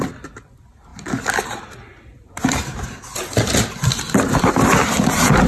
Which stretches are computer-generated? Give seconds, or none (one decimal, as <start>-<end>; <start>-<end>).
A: none